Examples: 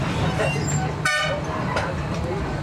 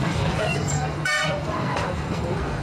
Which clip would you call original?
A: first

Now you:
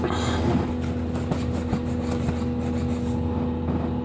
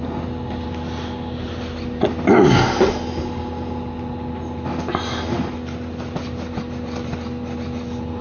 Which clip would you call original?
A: second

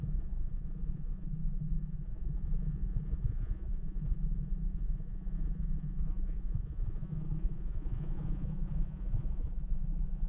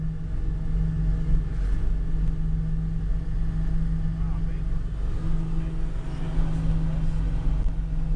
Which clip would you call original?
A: second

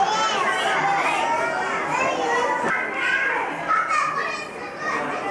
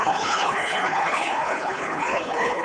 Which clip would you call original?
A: first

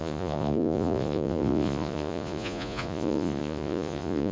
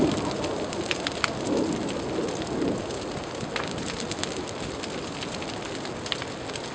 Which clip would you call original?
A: second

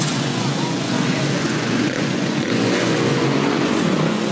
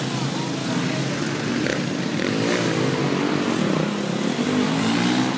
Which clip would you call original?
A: second